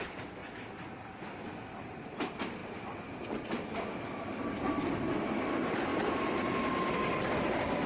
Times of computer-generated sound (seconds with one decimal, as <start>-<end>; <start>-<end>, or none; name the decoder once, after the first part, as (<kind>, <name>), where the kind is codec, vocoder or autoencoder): 0.0-0.4 (vocoder, BigVGAN v2); 1.8-2.6; 5.5-7.9